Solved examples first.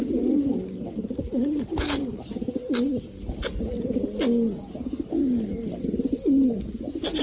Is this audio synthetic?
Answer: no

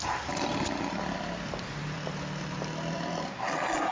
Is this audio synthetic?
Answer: no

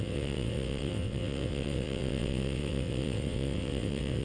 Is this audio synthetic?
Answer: yes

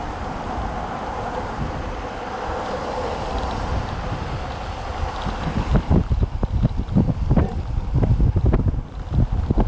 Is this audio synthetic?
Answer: no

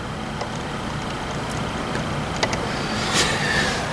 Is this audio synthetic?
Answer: no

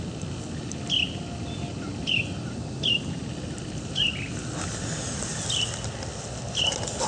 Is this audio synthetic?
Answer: no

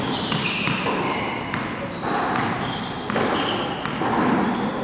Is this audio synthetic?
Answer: no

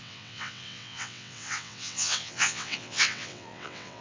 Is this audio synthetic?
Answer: yes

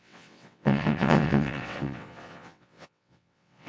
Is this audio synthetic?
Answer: yes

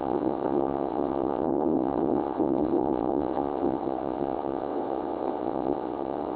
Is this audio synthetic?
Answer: yes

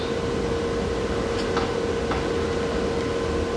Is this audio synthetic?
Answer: no